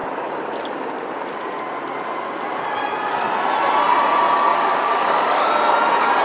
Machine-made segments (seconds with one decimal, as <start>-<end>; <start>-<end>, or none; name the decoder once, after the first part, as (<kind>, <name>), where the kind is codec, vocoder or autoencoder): 4.5-5.5 (codec, DAC)